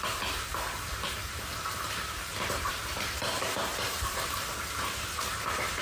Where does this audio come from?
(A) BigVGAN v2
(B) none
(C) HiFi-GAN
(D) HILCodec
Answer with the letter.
A